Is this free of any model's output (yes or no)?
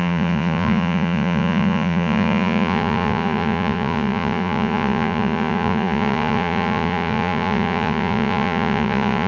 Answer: no